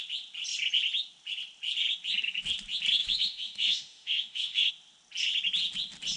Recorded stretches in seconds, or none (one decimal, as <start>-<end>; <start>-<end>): 0.0-3.0; 4.7-6.2